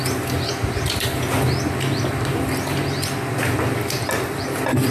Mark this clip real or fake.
real